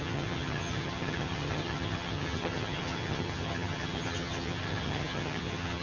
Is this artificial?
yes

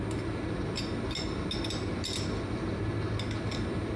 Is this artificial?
no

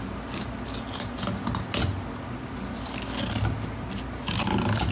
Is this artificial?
no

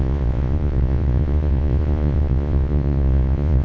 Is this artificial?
yes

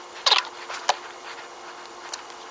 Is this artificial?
no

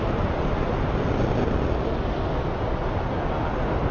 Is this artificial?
no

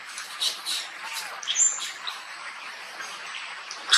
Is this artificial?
no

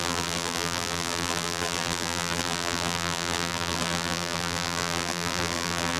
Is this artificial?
yes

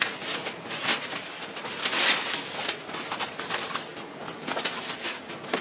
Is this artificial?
no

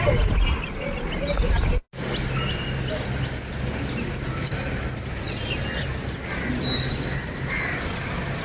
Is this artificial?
no